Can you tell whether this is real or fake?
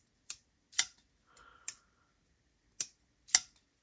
real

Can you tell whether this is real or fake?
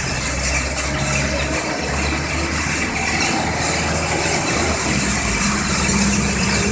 real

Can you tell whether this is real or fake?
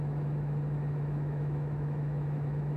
fake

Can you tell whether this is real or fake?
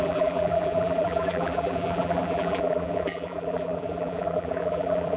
fake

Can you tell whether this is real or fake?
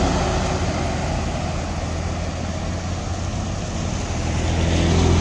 real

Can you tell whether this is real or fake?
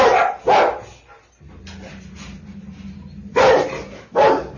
real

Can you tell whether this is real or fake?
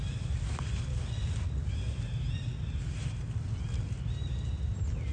real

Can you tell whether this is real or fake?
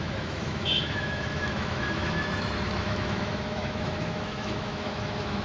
fake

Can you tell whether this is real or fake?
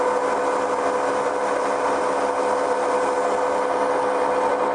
real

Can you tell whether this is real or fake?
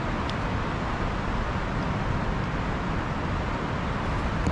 real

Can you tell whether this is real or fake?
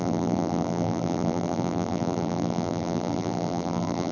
fake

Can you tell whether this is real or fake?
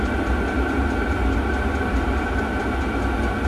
real